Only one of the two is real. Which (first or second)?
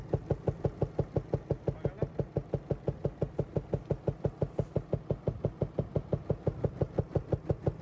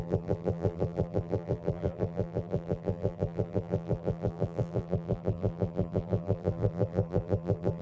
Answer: first